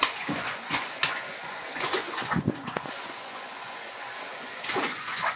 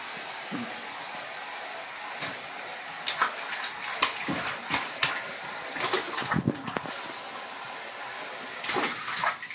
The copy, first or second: first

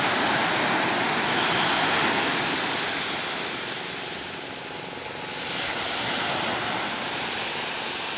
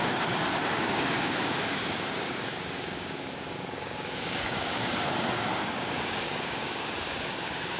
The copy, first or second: second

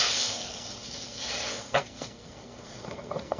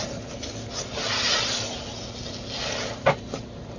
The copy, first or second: first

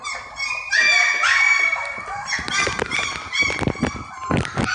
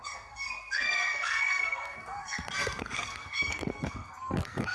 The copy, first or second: second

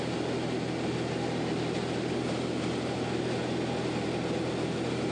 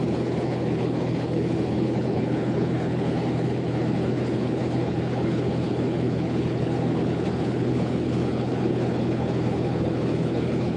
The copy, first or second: second